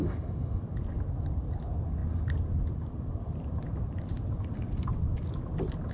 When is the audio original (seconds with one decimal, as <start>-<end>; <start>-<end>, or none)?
0.6-5.9